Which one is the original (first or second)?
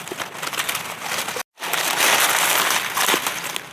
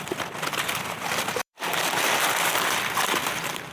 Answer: first